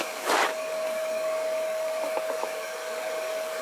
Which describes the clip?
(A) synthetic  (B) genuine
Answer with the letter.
A